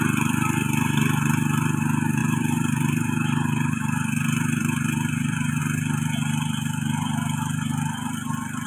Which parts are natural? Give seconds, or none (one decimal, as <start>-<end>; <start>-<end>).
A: 0.0-2.2; 5.6-8.7